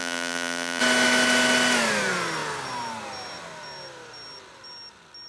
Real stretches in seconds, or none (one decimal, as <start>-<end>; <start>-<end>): 0.8-5.3